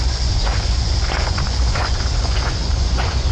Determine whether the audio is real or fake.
fake